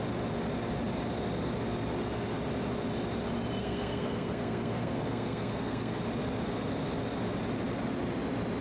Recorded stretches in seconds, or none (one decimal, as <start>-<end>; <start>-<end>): 0.0-3.6; 6.0-8.6